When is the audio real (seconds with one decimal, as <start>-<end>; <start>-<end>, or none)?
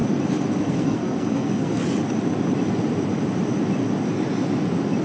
0.0-0.6; 1.8-5.0